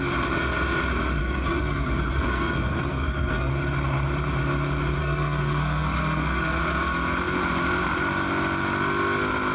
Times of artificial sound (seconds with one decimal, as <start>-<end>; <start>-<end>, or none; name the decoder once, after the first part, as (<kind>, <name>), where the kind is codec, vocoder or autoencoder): 1.2-3.5 (codec, SNAC); 5.0-6.6